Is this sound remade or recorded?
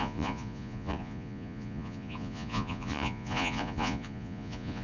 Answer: remade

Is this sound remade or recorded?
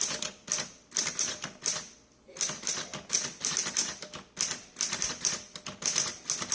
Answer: recorded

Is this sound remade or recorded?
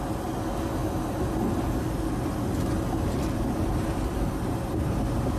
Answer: recorded